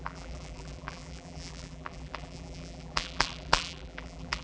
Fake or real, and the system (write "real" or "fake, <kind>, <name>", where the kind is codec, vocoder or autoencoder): fake, vocoder, BigVGAN v2